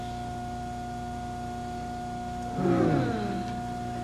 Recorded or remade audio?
recorded